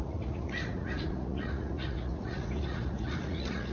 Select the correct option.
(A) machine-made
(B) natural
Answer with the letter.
A